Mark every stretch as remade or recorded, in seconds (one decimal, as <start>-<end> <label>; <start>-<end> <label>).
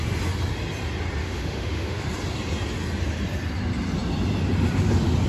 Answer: 0.0-1.2 recorded; 1.2-2.0 remade; 2.0-5.3 recorded